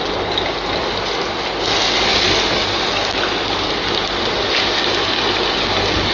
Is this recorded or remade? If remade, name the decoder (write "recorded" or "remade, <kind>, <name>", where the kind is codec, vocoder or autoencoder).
recorded